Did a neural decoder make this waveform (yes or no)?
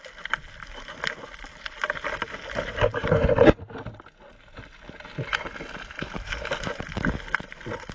no